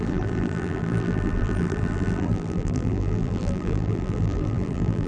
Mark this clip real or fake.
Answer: fake